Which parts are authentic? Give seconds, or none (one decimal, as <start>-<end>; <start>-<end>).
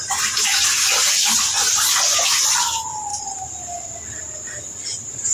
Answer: 0.0-3.1; 3.9-5.3